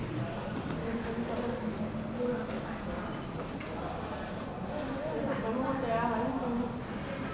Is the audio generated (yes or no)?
no